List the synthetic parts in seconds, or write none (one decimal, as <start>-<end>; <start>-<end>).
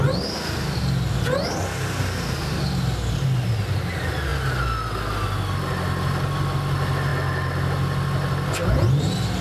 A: none